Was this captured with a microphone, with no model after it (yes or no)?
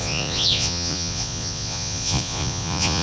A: no